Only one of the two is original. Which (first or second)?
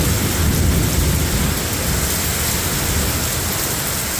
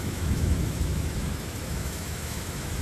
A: first